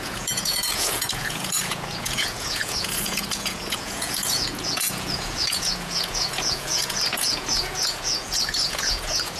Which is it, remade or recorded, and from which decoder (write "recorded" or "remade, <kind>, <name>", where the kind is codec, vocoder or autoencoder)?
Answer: remade, vocoder, Vocos